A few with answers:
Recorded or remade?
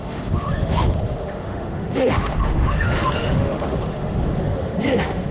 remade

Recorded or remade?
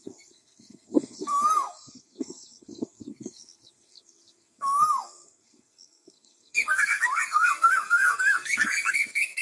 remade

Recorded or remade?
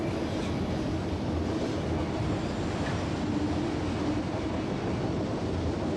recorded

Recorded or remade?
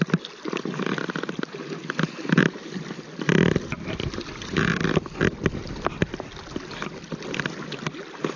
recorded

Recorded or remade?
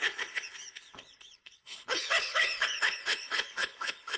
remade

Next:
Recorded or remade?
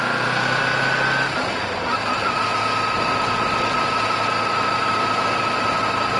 recorded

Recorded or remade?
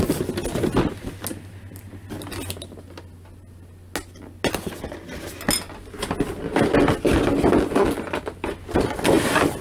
recorded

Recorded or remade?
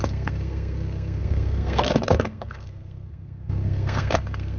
remade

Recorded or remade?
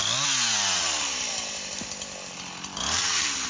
recorded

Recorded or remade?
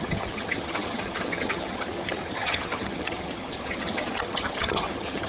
remade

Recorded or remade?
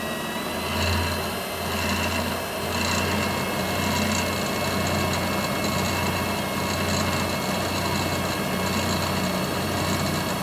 recorded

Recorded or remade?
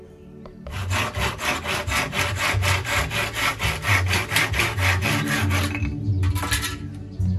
recorded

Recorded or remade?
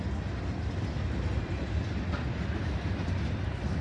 recorded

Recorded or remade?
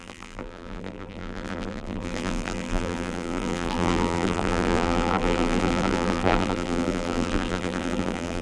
remade